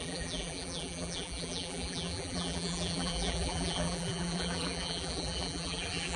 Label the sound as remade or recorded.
remade